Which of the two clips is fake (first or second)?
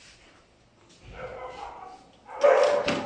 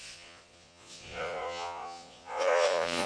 second